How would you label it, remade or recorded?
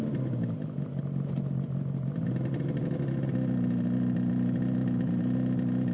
recorded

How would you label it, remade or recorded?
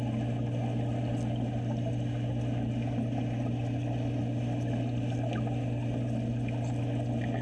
recorded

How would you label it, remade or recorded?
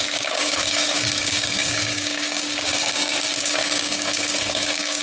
remade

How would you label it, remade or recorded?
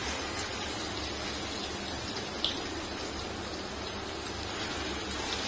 recorded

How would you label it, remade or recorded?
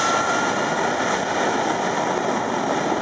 recorded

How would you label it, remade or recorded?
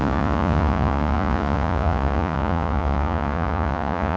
remade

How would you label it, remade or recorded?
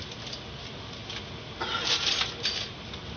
recorded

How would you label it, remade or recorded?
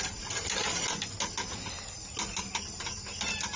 recorded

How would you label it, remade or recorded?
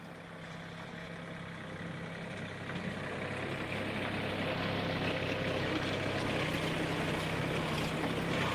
recorded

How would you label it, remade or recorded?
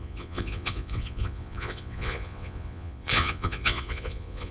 remade